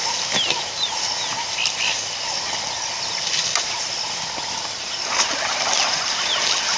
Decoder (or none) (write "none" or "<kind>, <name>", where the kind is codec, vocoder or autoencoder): none